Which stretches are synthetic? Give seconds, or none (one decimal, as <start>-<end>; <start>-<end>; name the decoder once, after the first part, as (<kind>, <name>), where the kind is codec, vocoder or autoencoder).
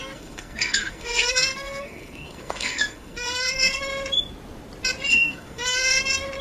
0.0-3.8 (codec, SNAC); 5.1-6.0